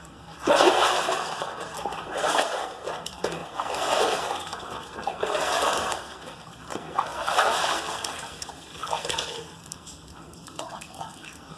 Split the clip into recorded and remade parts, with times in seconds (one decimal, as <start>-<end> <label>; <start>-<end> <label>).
0.0-11.6 remade